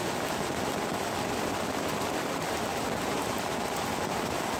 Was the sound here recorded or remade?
recorded